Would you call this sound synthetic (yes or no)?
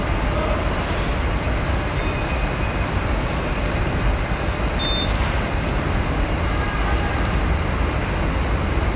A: no